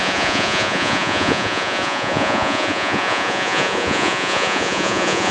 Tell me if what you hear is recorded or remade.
remade